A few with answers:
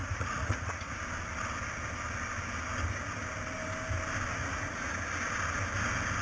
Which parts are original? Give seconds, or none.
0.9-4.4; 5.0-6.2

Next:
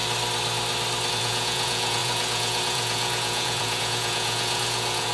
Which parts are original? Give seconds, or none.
0.0-1.1

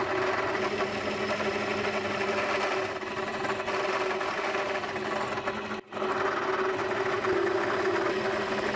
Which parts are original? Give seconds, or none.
0.0-8.8

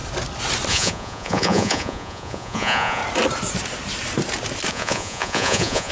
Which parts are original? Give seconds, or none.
0.0-0.7; 3.0-4.7

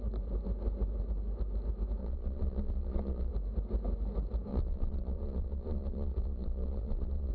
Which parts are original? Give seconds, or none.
0.0-2.0; 3.3-4.5